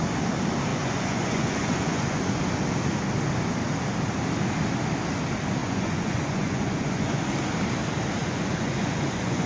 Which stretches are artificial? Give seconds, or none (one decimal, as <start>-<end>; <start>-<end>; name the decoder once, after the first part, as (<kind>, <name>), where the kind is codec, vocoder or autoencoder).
0.7-2.4 (vocoder, Vocos); 5.6-7.3; 8.2-9.5

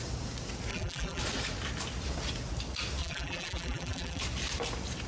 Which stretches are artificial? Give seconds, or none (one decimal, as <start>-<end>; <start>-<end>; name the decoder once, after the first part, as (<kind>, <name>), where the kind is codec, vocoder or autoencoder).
0.7-1.2 (vocoder, BigVGAN v2); 3.0-4.2